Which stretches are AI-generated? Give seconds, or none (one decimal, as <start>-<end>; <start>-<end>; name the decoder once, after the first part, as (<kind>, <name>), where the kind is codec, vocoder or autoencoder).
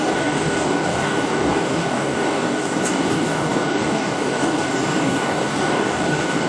0.0-6.5 (codec, DAC)